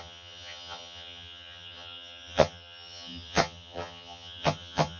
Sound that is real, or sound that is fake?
fake